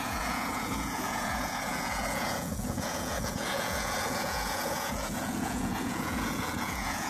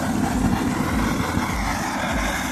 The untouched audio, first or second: second